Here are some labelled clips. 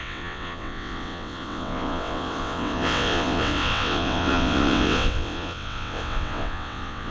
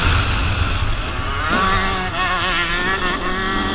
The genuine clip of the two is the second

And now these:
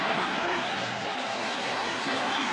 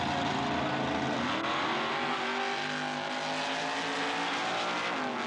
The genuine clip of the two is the second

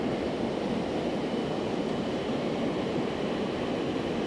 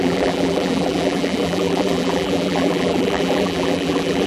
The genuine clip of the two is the first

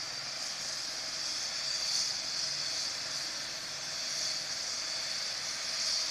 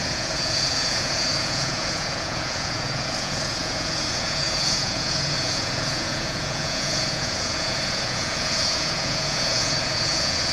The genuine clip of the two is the first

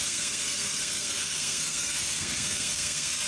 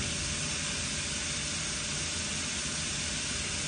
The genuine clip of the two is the second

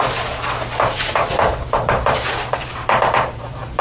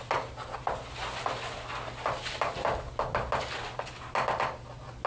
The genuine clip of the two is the second